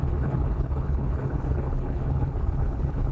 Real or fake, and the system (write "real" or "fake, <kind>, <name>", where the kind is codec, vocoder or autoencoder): fake, codec, HILCodec